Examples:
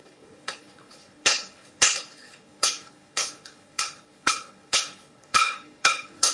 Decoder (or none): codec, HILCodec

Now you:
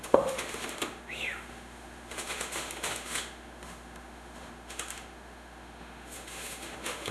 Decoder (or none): autoencoder, DAC-VAE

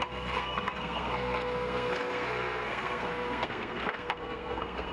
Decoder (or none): codec, SNAC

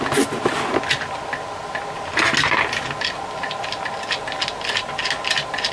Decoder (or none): none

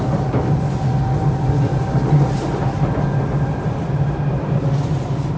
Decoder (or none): none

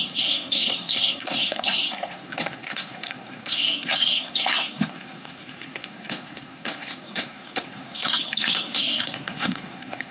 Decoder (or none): codec, SNAC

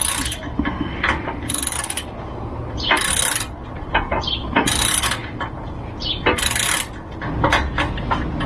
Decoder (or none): none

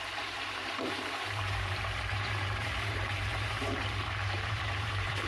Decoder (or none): vocoder, BigVGAN v2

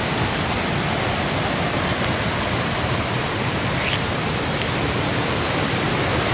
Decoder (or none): none